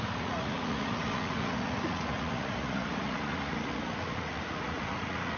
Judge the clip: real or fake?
fake